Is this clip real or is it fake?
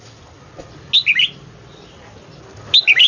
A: real